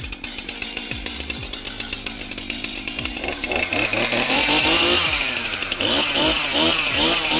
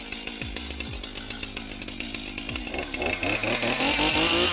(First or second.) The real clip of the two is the second